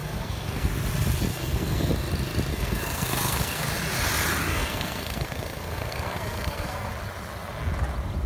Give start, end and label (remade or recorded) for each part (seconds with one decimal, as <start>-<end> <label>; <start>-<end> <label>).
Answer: 0.0-0.7 remade; 0.7-1.3 recorded; 1.3-1.9 remade; 1.9-2.5 recorded; 2.5-3.7 remade; 3.7-4.5 recorded; 4.5-6.9 remade; 6.9-8.3 recorded